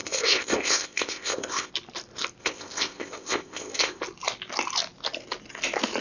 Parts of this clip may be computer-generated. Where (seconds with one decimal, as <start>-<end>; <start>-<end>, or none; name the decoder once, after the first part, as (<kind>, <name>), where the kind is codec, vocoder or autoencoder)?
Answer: 0.0-1.7 (codec, ZipCodec); 2.4-4.0